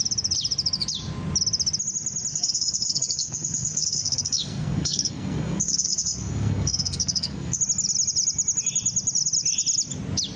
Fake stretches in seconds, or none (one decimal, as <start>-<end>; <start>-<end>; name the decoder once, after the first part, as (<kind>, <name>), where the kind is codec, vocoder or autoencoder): 2.3-7.6 (codec, SNAC)